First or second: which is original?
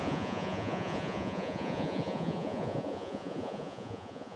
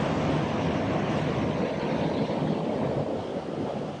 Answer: second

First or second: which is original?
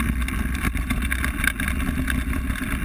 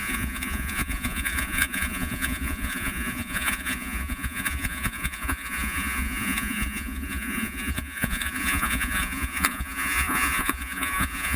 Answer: first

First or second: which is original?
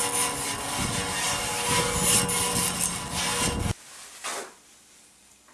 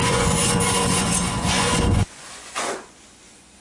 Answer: first